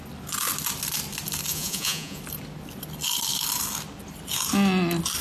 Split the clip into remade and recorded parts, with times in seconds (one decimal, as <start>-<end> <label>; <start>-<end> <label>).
0.0-1.5 recorded; 1.5-2.2 remade; 2.2-5.2 recorded